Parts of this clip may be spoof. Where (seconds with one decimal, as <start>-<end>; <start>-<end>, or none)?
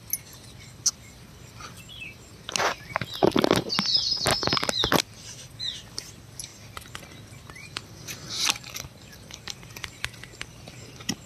none